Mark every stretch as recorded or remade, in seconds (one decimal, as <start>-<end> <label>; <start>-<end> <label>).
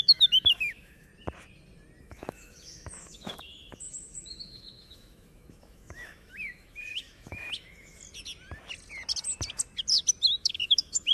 0.0-1.1 remade; 1.1-2.0 recorded; 2.0-8.0 remade; 8.0-10.4 recorded; 10.4-11.1 remade